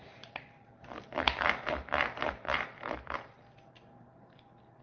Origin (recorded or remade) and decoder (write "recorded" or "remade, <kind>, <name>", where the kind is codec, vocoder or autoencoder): remade, vocoder, BigVGAN v2